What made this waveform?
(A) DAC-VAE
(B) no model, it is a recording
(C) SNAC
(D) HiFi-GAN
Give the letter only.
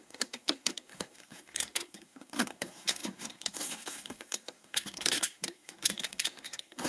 C